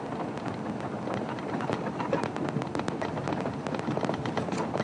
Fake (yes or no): no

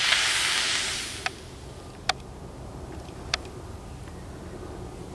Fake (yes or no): no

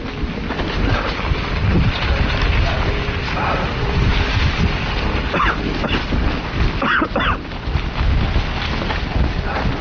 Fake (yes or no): no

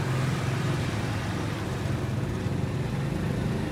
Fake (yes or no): no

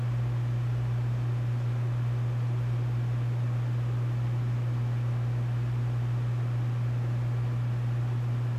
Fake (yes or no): no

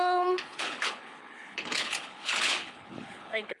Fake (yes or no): yes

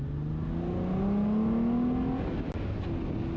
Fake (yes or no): no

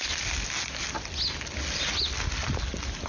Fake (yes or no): no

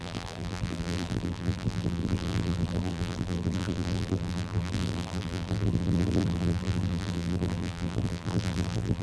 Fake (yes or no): yes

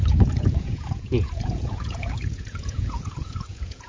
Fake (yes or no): yes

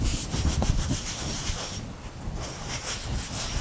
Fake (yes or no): no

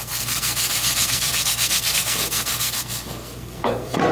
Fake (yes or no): yes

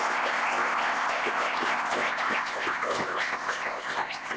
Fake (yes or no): yes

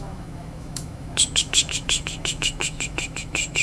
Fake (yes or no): yes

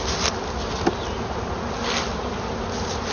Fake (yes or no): no